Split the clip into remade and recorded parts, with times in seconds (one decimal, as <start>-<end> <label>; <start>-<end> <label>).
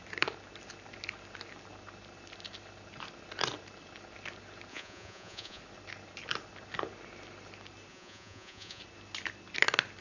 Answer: 0.0-4.7 recorded; 4.7-5.6 remade; 5.6-7.9 recorded; 7.9-8.8 remade; 8.8-10.0 recorded